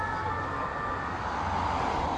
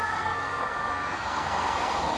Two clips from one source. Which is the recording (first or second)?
first